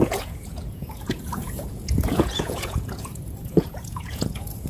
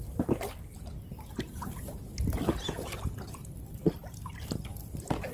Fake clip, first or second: first